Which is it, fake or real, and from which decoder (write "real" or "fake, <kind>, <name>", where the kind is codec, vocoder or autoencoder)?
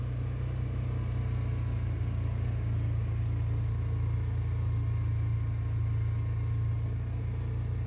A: real